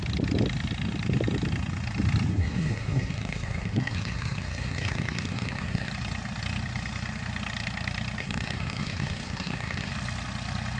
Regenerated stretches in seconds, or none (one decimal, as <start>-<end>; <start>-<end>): 2.3-5.9; 8.2-9.9